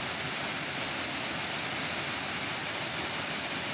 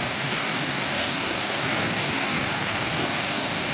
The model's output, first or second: second